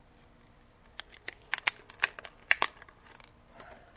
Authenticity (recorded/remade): recorded